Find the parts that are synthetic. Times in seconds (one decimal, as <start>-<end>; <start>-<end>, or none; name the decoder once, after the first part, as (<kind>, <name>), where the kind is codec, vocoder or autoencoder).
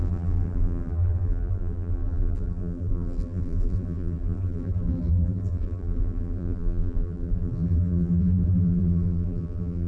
0.0-9.9 (vocoder, BigVGAN v2)